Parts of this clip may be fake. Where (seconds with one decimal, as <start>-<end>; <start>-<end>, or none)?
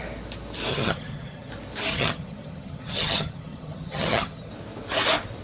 0.7-1.5; 1.9-4.5